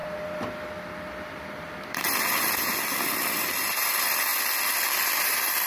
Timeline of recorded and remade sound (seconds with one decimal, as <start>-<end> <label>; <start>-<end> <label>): 0.0-4.3 remade; 4.3-5.0 recorded; 5.0-5.7 remade

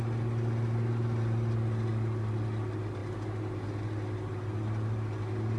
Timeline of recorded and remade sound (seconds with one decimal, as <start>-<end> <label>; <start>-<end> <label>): 0.0-5.6 recorded

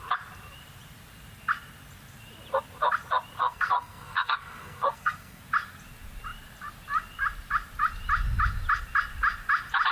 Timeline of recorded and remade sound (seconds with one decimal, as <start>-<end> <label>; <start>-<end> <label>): 0.0-3.4 recorded; 3.4-5.4 remade; 5.4-9.9 recorded